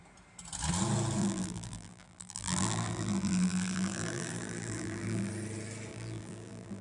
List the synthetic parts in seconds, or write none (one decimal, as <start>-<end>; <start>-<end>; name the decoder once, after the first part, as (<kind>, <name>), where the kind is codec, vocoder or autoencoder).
1.2-5.3 (vocoder, BigVGAN v2); 5.9-6.8